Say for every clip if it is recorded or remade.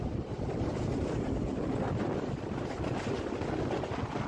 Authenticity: recorded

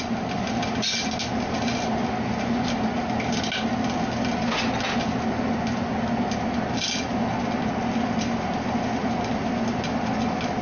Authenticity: recorded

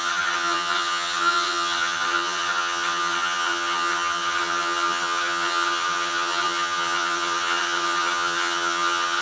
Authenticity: remade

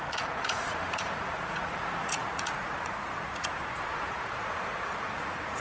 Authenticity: remade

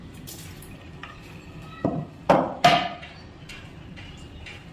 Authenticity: recorded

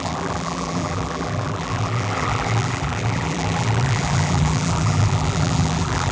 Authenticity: remade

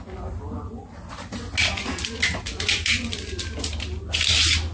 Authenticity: recorded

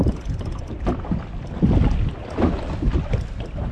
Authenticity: recorded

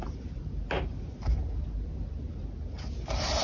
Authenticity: recorded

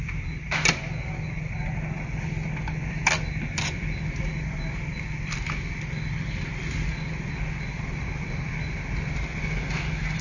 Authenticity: recorded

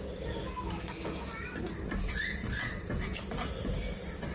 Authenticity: recorded